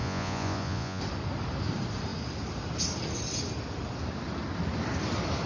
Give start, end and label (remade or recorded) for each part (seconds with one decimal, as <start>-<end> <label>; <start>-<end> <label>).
0.0-1.0 remade; 1.0-5.5 recorded